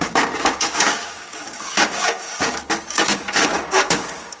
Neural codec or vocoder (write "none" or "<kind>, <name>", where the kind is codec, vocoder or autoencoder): codec, DAC